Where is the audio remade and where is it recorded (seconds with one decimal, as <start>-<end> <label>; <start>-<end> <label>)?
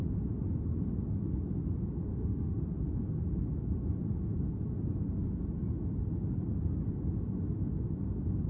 0.0-2.1 recorded; 2.1-2.6 remade; 2.6-8.5 recorded